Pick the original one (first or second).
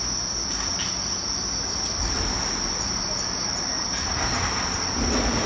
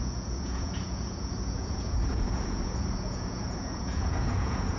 first